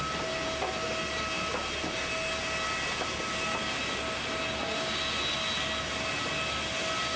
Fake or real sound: real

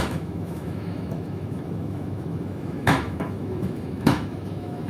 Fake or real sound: fake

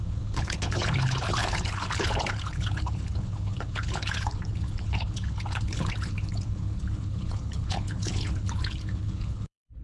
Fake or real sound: fake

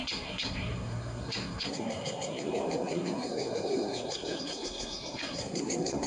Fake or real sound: fake